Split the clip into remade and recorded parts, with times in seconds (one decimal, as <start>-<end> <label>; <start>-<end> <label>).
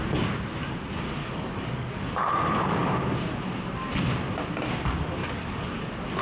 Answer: 0.0-1.2 recorded; 1.2-2.1 remade; 2.1-5.2 recorded; 5.2-5.8 remade; 5.8-6.2 recorded